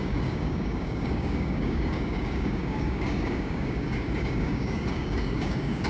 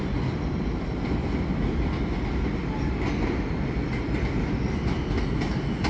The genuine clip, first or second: second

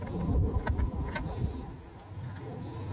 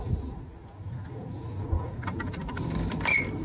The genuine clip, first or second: first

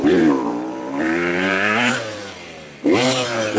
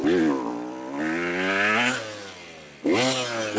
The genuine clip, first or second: second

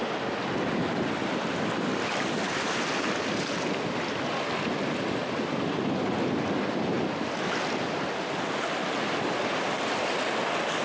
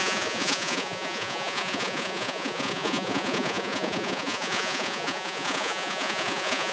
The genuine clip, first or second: first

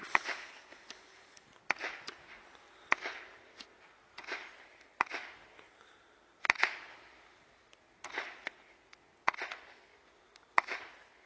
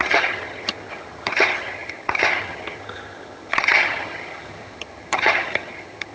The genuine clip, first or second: first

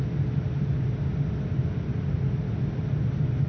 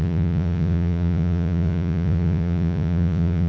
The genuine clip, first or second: first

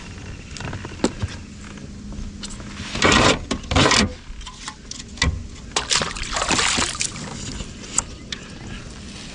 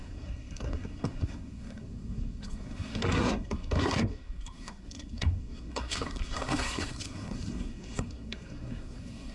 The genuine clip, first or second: first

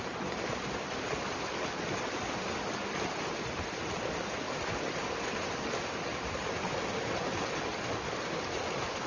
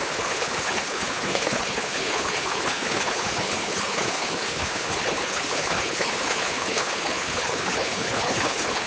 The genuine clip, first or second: first